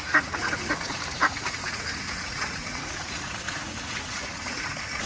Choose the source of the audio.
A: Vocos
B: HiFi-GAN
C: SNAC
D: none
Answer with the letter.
A